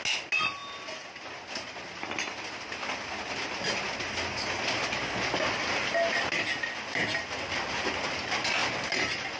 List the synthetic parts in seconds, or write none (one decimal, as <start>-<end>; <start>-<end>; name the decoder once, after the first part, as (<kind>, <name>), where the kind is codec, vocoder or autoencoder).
none